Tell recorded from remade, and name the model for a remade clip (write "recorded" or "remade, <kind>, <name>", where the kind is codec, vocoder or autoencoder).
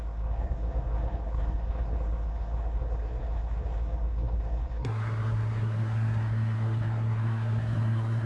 remade, codec, SNAC